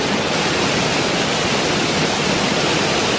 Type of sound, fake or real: real